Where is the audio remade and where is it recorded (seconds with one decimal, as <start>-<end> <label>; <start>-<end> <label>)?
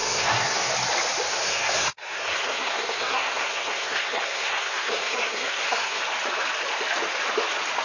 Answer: 0.0-0.7 remade; 0.7-1.3 recorded; 1.3-6.0 remade; 6.0-7.8 recorded